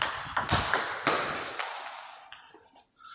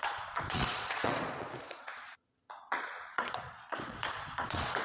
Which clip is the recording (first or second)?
first